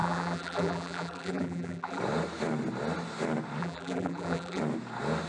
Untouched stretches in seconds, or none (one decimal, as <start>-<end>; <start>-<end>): 2.0-3.6; 4.6-5.3